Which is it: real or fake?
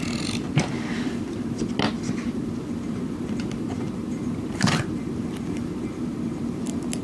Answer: fake